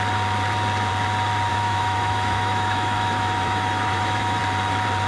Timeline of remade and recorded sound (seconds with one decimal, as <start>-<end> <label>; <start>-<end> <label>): 0.0-1.5 recorded; 1.5-4.4 remade; 4.4-5.1 recorded